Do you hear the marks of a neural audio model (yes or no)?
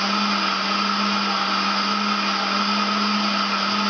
no